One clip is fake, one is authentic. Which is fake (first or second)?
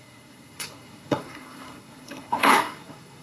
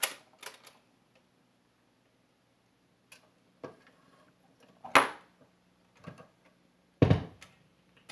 first